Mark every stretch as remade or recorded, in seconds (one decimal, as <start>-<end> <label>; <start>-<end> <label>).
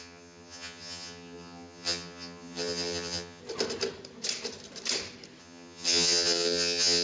0.0-3.4 remade; 3.4-5.4 recorded; 5.4-7.0 remade